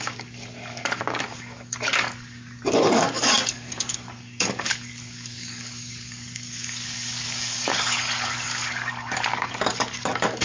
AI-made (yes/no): yes